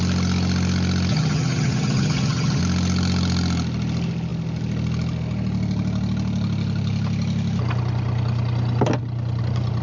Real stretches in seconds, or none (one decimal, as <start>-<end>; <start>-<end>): 0.0-1.1; 2.6-9.8